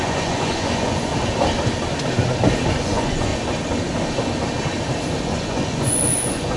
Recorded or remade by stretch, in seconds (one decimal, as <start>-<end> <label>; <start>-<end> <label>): 0.0-1.1 remade; 1.1-2.7 recorded; 2.7-3.3 remade; 3.3-5.2 recorded; 5.2-6.6 remade